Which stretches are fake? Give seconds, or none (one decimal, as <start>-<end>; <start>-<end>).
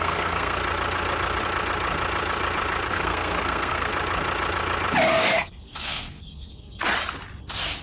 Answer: 0.0-0.6; 2.9-3.9; 5.1-6.8